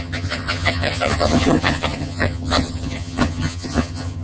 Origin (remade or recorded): remade